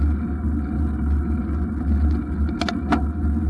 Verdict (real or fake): real